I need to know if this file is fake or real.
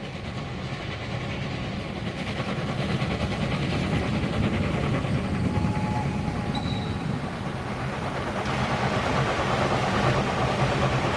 real